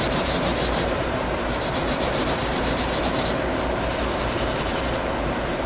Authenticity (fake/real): fake